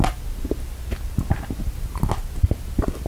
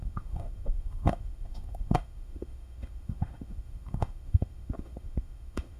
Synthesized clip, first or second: second